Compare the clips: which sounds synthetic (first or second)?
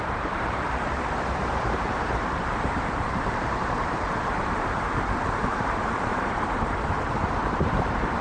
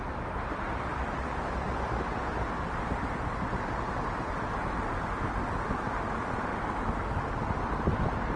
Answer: first